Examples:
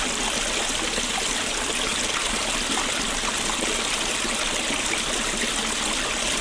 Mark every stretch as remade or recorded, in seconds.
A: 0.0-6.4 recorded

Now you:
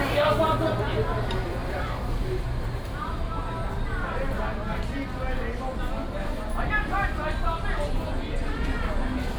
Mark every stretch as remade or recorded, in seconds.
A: 0.0-1.6 recorded; 1.6-3.4 remade; 3.4-9.4 recorded